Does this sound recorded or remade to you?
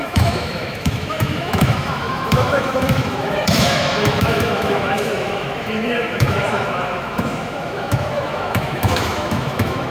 remade